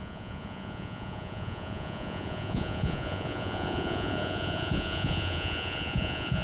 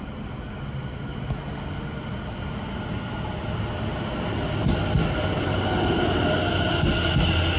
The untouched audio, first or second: second